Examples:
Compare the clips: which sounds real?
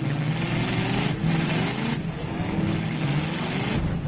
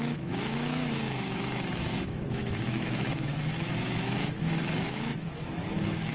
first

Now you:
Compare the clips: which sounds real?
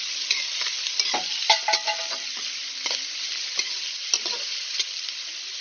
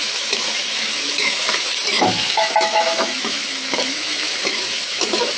first